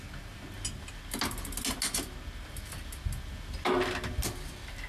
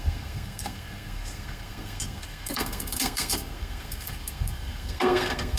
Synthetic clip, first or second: second